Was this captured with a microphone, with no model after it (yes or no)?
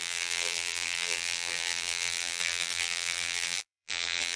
no